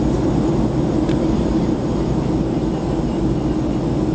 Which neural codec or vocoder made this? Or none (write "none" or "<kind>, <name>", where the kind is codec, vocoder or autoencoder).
none